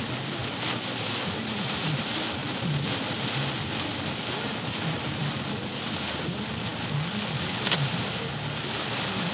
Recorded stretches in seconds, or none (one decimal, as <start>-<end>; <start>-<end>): 0.0-0.4; 2.0-9.3

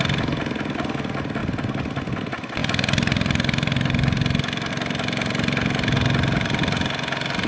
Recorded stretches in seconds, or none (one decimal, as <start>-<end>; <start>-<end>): 0.0-7.5

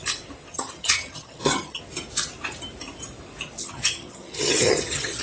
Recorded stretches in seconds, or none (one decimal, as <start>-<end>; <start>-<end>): 0.0-0.5; 1.8-3.6

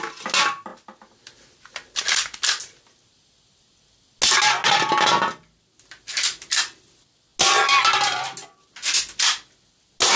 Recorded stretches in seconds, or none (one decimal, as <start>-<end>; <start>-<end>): 0.0-10.2

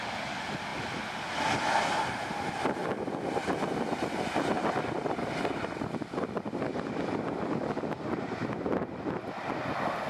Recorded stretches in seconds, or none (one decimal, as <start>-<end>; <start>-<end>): 0.0-0.7; 1.3-10.1

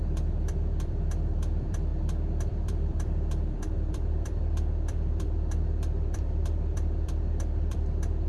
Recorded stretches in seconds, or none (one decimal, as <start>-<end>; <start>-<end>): 1.9-2.5